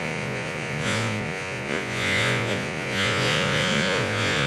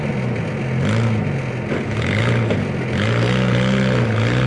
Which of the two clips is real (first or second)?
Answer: second